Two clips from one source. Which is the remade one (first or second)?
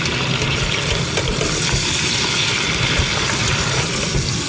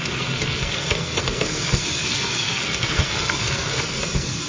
second